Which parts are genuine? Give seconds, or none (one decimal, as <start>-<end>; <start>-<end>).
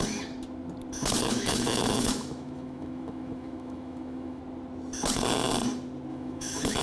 0.0-1.3; 4.4-6.1